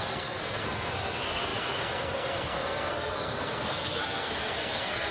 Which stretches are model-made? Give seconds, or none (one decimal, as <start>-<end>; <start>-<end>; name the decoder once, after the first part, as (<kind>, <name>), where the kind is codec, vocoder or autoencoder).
0.0-5.1 (codec, SNAC)